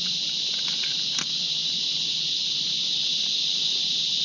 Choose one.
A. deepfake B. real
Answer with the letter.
B